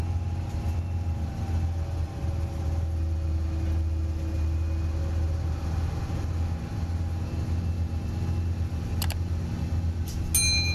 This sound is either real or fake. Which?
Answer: real